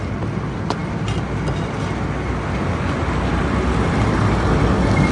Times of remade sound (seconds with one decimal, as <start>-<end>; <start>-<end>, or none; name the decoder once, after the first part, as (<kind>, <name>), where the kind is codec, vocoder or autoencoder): none